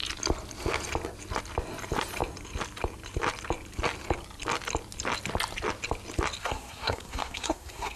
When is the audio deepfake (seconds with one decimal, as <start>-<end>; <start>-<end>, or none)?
6.4-8.0